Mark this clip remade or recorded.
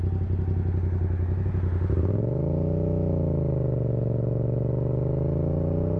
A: recorded